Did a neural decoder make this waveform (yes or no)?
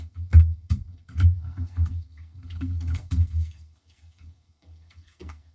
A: yes